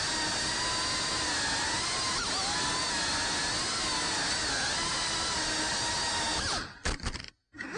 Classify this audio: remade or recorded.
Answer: recorded